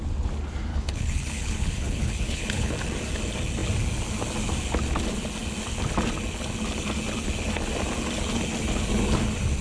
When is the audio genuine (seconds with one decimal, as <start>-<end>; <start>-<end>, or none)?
0.0-0.7; 2.7-9.6